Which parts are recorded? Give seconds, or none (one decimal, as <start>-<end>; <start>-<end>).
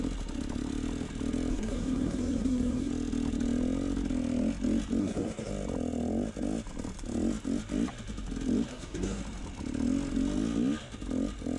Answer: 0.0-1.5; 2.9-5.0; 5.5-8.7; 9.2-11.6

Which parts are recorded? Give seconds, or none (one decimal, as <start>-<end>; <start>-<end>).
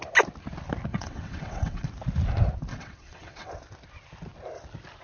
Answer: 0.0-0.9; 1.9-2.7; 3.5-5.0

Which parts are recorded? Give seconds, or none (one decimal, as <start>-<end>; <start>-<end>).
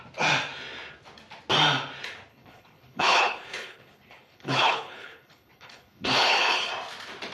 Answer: 0.0-2.3; 6.7-7.3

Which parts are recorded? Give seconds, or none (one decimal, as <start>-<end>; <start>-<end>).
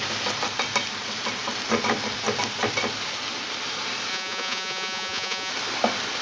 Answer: 0.0-4.1; 5.5-6.2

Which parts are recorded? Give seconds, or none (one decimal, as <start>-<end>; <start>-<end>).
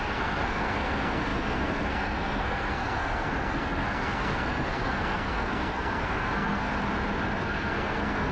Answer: 6.7-7.4